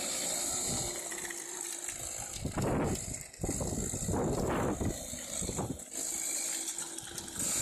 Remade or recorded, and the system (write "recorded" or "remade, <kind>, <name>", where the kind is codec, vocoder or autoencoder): recorded